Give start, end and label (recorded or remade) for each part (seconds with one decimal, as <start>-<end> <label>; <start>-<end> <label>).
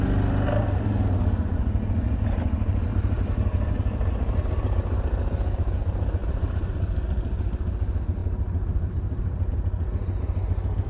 0.0-2.9 recorded; 2.9-3.8 remade; 3.8-6.2 recorded; 6.2-6.7 remade; 6.7-8.2 recorded; 8.2-9.5 remade; 9.5-10.9 recorded